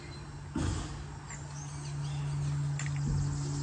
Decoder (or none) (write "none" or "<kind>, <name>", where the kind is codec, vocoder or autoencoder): none